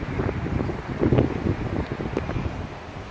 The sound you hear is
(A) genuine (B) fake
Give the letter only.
A